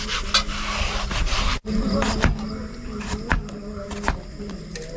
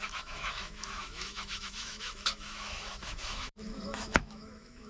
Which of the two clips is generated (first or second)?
second